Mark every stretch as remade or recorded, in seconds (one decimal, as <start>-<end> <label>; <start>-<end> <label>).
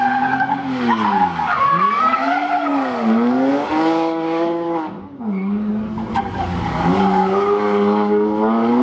0.0-5.7 remade; 5.7-6.2 recorded; 6.2-8.8 remade